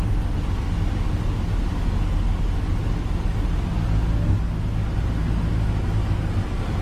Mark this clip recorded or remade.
recorded